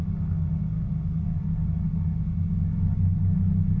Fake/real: real